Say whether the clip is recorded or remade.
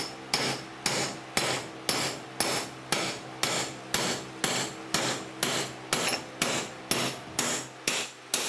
recorded